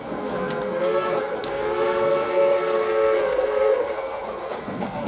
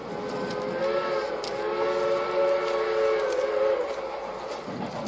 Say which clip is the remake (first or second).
first